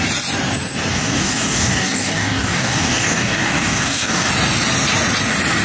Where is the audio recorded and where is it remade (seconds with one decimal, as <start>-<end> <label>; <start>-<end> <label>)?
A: 0.0-0.9 recorded; 0.9-4.3 remade; 4.3-5.6 recorded

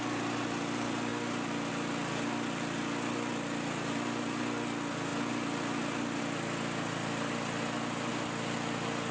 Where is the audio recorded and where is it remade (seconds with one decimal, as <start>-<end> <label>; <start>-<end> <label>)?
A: 0.0-9.1 recorded